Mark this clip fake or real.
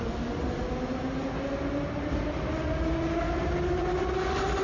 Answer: real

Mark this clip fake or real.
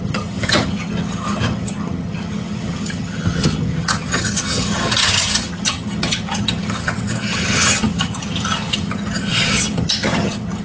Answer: fake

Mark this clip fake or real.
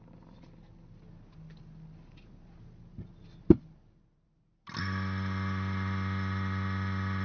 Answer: real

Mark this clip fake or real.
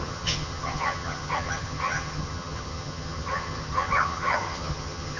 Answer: fake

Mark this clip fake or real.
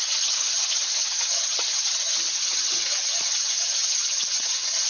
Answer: fake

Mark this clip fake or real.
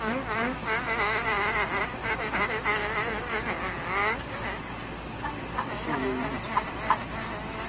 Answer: real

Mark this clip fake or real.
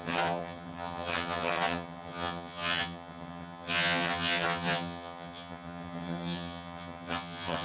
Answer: fake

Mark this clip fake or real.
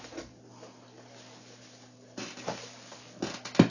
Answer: real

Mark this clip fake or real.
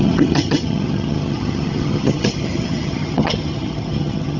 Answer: fake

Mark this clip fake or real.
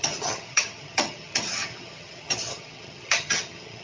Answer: fake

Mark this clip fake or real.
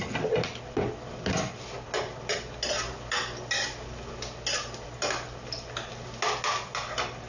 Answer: real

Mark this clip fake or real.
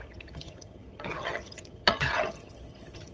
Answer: fake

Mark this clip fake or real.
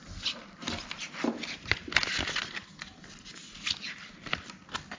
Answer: real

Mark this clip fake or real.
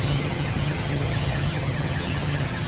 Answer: fake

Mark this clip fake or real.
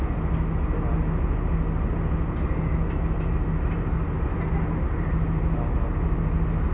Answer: real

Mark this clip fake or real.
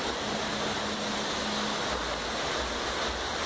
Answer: real